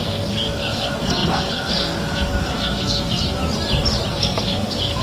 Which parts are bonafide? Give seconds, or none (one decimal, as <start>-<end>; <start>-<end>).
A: 3.4-4.1

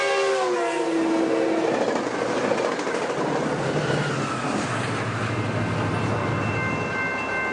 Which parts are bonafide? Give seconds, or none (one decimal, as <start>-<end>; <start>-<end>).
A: 0.0-7.5

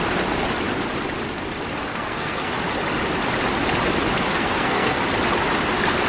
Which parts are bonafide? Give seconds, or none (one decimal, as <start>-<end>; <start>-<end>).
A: 0.0-1.9; 2.5-4.3; 5.0-6.1

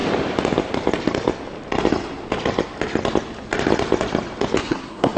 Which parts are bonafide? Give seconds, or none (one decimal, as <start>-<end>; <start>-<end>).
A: 0.0-4.6

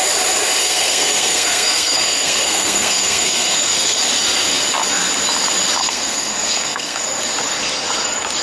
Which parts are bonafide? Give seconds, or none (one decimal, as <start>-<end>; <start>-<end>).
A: 0.0-0.6; 4.0-5.8; 7.0-8.4

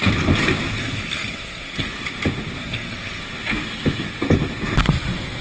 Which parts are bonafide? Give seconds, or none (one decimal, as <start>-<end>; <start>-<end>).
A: 0.0-0.8; 1.9-2.6; 3.2-5.4

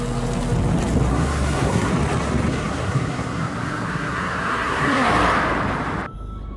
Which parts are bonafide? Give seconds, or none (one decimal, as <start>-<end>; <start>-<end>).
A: 0.0-1.1; 1.9-2.5; 5.1-6.6

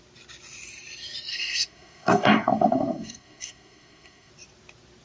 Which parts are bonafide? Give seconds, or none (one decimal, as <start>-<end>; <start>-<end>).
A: 0.0-1.3; 4.3-5.0